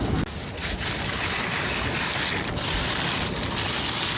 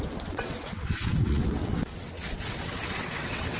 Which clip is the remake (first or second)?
second